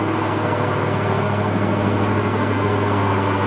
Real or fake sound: fake